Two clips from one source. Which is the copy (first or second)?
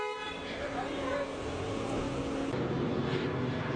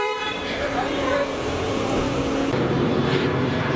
second